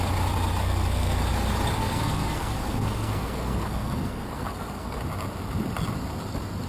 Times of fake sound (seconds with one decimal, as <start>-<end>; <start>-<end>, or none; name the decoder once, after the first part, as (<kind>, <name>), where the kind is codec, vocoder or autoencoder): 0.6-1.2 (codec, SNAC); 1.8-5.0